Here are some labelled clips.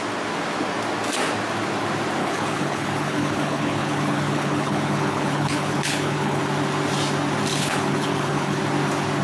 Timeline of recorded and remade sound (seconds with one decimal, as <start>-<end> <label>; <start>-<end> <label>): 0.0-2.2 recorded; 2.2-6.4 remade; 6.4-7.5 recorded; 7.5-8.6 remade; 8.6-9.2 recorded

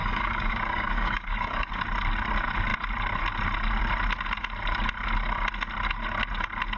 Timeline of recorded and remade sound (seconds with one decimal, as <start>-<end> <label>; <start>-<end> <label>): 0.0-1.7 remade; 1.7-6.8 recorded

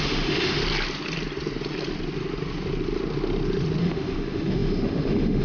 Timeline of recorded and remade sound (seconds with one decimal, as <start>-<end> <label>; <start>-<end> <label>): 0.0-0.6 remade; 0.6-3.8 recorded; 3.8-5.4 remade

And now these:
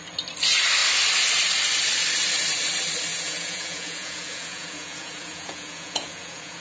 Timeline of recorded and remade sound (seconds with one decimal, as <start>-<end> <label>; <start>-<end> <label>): 0.0-3.1 recorded; 3.1-6.6 remade

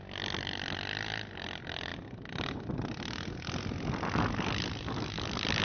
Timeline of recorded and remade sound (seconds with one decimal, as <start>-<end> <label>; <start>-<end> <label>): 0.0-5.6 recorded

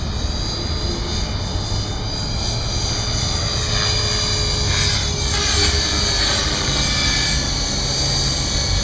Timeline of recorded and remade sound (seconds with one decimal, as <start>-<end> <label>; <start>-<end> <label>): 0.0-6.3 recorded; 6.3-7.5 remade; 7.5-8.8 recorded

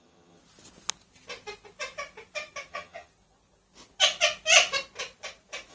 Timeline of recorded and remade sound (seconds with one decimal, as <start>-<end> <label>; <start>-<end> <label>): 0.0-0.4 remade; 0.4-2.7 recorded; 2.7-3.1 remade; 3.1-5.7 recorded